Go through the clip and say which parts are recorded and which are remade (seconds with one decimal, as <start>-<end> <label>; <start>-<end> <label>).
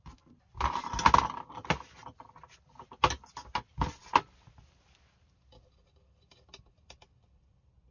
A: 0.0-7.9 recorded